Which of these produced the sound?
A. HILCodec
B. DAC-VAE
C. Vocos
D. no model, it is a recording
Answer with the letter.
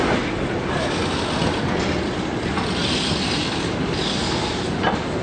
D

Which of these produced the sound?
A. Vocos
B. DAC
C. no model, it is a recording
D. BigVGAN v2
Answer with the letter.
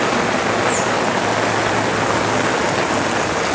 C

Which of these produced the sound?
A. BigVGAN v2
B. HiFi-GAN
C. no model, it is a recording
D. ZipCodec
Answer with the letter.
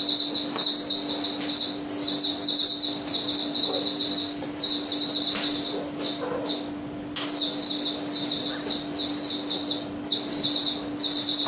C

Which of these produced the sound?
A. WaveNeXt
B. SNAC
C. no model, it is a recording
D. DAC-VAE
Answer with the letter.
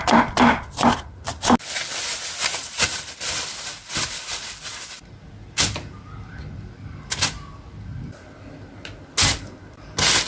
C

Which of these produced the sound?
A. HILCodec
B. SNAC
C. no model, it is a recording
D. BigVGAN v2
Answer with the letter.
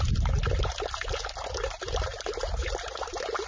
C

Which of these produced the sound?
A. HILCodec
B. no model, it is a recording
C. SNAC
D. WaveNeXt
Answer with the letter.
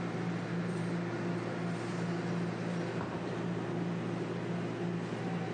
B